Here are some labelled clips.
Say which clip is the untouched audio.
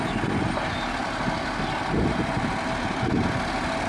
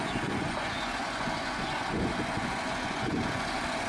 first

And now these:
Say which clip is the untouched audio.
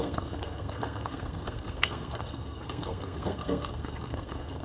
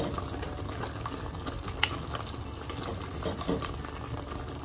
second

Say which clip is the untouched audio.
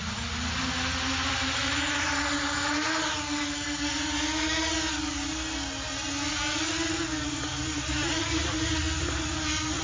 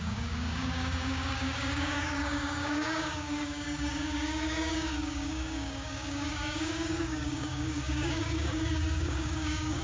first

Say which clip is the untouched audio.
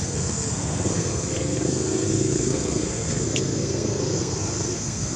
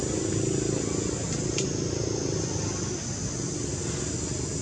second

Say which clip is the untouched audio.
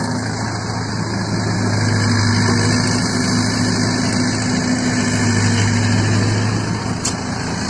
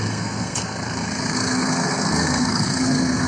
first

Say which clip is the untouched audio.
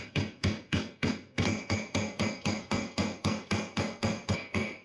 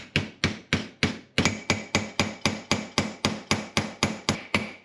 second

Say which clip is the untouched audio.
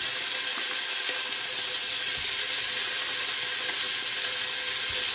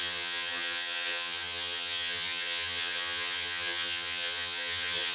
first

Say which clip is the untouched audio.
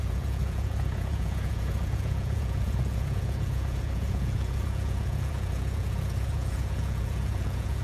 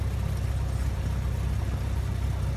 second